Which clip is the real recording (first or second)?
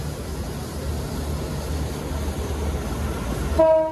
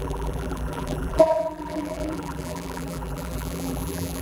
first